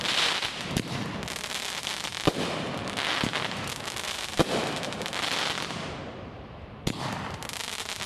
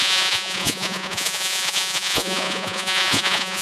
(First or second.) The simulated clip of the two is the second